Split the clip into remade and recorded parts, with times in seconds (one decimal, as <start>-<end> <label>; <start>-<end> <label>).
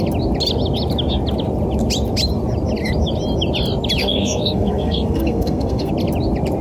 0.0-4.0 recorded; 4.0-5.9 remade; 5.9-6.6 recorded